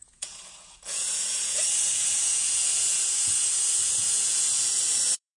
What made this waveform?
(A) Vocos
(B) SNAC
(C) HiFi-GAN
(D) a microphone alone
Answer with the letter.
A